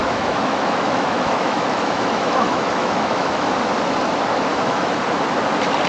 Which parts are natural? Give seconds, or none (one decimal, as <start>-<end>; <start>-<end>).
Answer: 3.5-4.5; 5.0-5.9